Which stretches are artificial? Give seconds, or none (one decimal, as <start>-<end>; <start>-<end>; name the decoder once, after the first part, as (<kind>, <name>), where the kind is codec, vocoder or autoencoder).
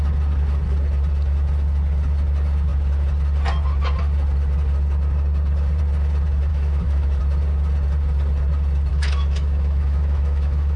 6.5-7.2 (autoencoder, DAC-VAE); 8.9-10.8